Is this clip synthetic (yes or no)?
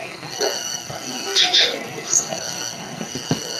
yes